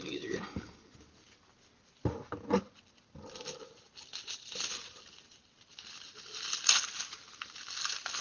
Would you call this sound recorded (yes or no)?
yes